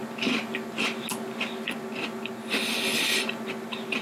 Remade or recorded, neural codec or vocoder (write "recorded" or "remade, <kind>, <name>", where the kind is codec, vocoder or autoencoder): recorded